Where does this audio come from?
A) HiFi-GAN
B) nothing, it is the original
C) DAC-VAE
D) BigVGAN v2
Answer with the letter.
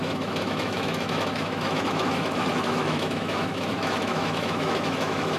C